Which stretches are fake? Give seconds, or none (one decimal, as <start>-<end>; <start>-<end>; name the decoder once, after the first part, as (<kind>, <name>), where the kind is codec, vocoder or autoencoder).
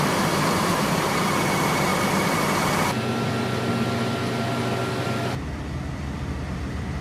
0.0-1.9 (vocoder, BigVGAN v2); 6.1-7.0